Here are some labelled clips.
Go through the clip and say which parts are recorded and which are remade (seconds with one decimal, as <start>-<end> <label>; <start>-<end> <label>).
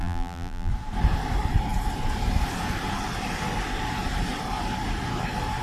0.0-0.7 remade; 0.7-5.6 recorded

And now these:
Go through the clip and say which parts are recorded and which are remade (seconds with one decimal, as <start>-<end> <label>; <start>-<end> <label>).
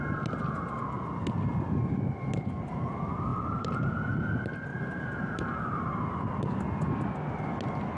0.0-3.3 recorded; 3.3-3.9 remade; 3.9-4.7 recorded; 4.7-6.0 remade; 6.0-8.0 recorded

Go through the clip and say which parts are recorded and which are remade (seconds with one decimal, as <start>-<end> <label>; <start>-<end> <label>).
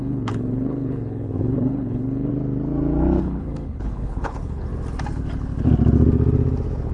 0.0-2.3 remade; 2.3-3.2 recorded; 3.2-4.7 remade; 4.7-6.9 recorded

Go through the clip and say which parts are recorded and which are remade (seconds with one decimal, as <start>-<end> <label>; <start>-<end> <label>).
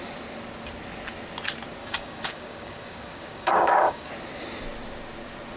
0.0-1.8 recorded; 1.8-4.1 remade; 4.1-5.6 recorded